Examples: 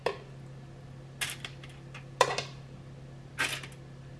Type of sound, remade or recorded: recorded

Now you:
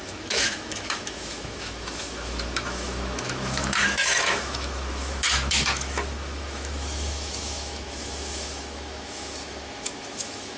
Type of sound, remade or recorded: remade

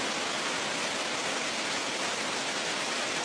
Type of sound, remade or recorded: recorded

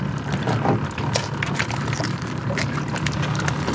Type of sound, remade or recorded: recorded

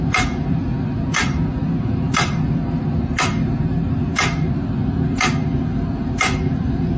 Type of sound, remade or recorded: remade